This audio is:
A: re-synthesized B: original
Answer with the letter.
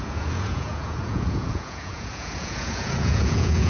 A